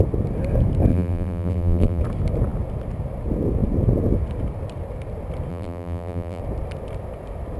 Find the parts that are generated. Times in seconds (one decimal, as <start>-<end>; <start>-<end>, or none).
0.9-2.0; 5.5-6.4